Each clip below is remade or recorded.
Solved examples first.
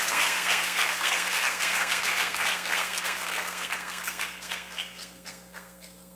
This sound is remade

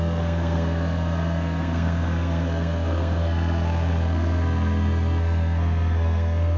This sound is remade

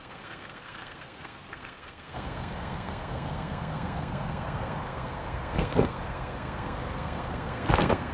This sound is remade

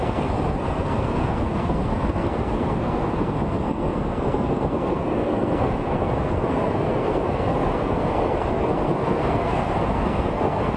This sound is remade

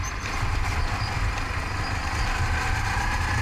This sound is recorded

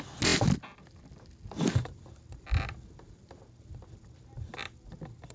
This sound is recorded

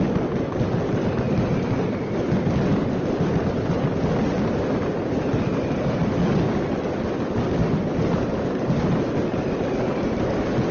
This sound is recorded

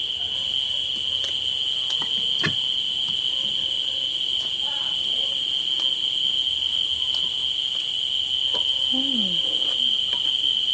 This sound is recorded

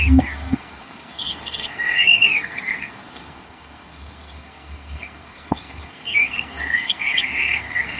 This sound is remade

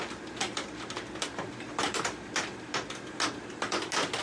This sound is recorded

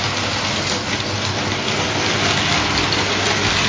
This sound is recorded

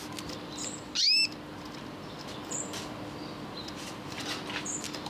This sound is recorded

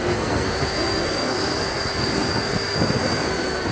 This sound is remade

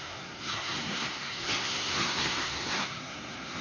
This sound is remade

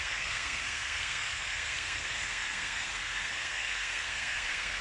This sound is remade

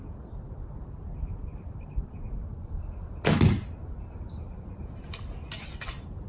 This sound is recorded